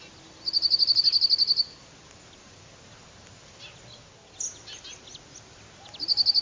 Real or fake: real